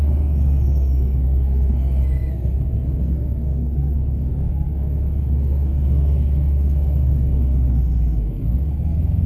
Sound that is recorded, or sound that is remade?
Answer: remade